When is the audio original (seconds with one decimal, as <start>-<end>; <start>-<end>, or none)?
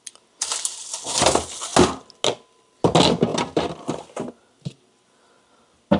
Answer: 0.0-3.3; 4.3-6.0